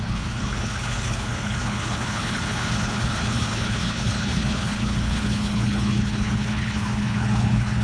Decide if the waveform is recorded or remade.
remade